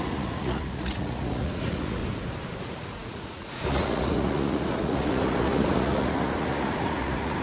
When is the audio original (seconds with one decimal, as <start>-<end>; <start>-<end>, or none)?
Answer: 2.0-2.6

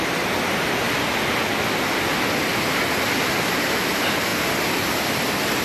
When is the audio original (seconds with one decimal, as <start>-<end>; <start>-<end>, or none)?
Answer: 0.0-5.6

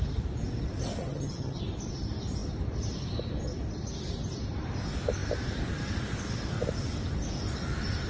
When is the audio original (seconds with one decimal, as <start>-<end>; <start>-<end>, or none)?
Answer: 0.0-1.0; 1.6-8.1